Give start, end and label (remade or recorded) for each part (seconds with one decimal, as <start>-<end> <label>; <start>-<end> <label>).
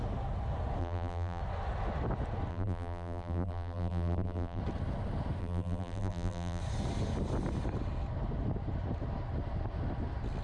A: 0.0-0.8 recorded; 0.8-1.4 remade; 1.4-2.5 recorded; 2.5-4.6 remade; 4.6-5.4 recorded; 5.4-6.6 remade; 6.6-10.4 recorded